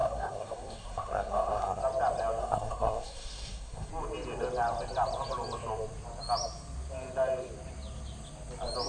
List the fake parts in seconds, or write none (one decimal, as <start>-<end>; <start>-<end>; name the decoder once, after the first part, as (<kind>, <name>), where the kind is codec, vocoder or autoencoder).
0.0-1.8 (codec, SNAC); 2.4-3.9